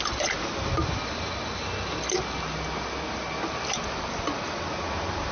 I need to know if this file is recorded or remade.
recorded